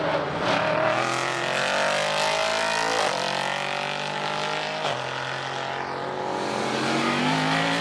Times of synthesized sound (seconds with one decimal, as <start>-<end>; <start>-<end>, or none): none